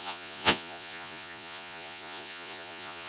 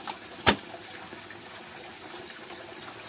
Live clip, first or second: second